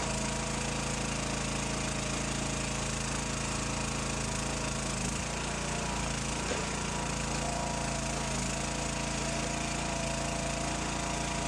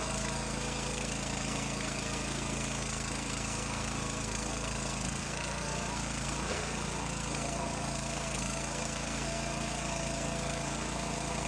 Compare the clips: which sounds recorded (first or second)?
first